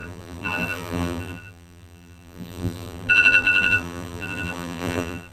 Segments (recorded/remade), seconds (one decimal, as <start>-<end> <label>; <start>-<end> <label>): 0.0-5.3 remade